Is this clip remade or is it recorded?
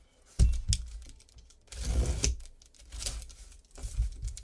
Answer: recorded